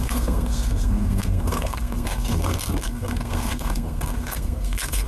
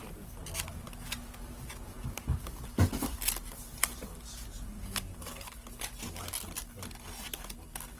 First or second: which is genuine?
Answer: second